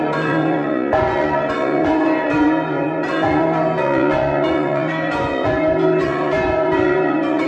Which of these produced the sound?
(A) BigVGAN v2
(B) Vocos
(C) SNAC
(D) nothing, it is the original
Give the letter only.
B